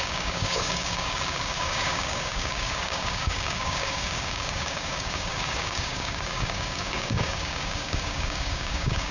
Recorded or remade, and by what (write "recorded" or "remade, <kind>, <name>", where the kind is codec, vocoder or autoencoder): remade, codec, DAC